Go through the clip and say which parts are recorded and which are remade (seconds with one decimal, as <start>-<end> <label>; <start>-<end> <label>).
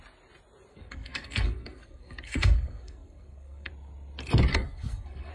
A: 0.0-0.7 recorded; 0.7-3.7 remade; 3.7-4.5 recorded; 4.5-5.3 remade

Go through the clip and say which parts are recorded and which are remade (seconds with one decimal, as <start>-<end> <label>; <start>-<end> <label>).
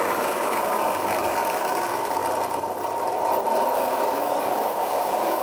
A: 0.0-2.2 remade; 2.2-3.7 recorded; 3.7-5.4 remade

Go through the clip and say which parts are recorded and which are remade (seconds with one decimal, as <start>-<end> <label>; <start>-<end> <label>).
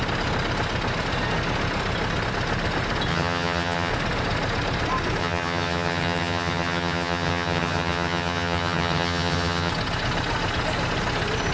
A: 0.0-3.1 recorded; 3.1-3.9 remade; 3.9-5.2 recorded; 5.2-9.7 remade; 9.7-11.5 recorded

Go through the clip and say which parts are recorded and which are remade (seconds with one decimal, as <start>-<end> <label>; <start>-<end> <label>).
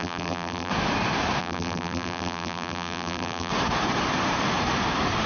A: 0.0-0.7 remade; 0.7-1.4 recorded; 1.4-3.5 remade; 3.5-5.3 recorded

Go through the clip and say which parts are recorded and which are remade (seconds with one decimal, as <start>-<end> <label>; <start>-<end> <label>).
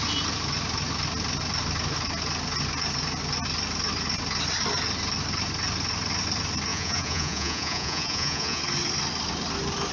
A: 0.0-6.7 recorded; 6.7-8.6 remade; 8.6-9.9 recorded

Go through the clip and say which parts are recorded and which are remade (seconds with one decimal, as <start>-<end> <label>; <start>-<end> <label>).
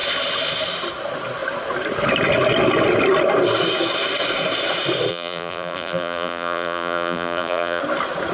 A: 0.0-5.1 recorded; 5.1-7.8 remade; 7.8-8.3 recorded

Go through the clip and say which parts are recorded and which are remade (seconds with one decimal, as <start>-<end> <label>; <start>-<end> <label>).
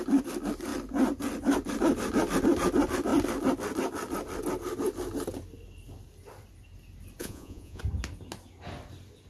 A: 0.0-7.2 recorded; 7.2-7.8 remade; 7.8-9.3 recorded